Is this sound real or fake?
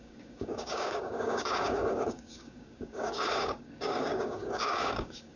fake